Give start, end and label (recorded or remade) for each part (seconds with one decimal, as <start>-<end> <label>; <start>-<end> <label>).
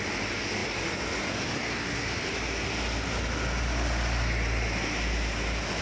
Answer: 0.0-5.8 recorded